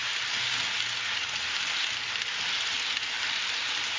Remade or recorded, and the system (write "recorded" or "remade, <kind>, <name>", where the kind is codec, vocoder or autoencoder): recorded